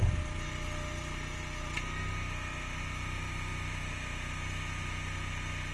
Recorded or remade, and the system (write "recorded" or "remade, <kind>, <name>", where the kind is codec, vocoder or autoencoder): recorded